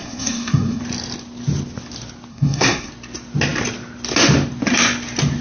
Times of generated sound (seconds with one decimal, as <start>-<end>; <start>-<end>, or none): 0.0-0.8; 2.3-2.9